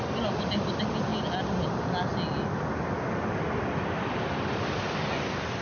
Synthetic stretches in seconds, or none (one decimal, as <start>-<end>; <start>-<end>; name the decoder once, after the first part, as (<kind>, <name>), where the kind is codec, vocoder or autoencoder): none